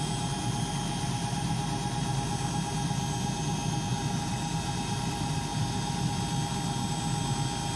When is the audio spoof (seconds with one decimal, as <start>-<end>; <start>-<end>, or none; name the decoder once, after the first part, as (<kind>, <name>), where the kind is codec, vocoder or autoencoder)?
none